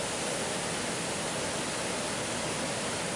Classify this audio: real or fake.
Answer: real